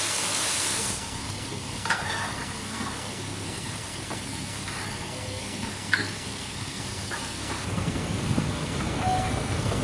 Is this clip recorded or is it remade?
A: remade